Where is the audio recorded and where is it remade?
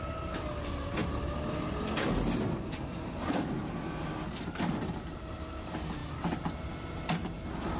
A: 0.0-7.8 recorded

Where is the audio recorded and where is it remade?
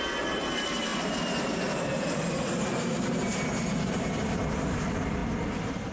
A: 0.0-5.2 remade; 5.2-5.9 recorded